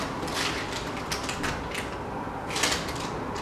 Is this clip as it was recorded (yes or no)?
yes